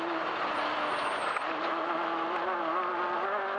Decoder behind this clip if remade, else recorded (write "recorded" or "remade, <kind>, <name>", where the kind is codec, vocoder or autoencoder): recorded